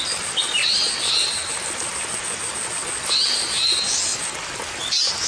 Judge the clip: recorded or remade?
recorded